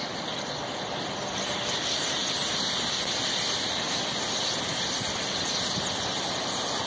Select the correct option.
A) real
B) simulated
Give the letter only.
A